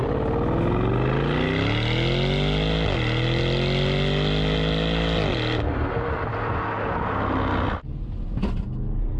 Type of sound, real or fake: real